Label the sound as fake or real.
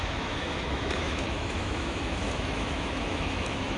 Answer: fake